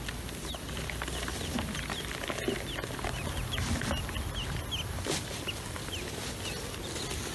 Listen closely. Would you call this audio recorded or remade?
recorded